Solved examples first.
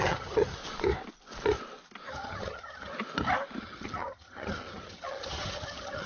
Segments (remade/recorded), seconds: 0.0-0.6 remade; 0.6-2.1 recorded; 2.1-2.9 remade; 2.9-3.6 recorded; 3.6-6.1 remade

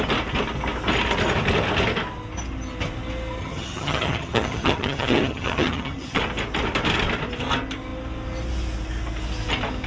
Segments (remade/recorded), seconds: 0.0-3.4 recorded; 3.4-6.2 remade; 6.2-9.9 recorded

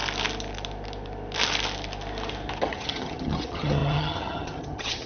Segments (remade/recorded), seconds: 0.0-2.6 recorded; 2.6-5.1 remade